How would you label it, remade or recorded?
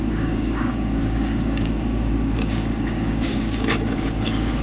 remade